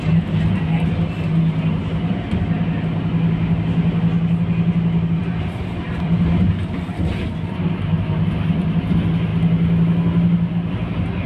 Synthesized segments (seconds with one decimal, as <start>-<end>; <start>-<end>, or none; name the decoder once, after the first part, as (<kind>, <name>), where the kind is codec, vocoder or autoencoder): 5.2-6.8 (vocoder, BigVGAN v2)